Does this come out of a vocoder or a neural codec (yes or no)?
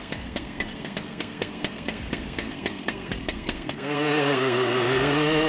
yes